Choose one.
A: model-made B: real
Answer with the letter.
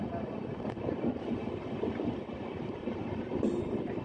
A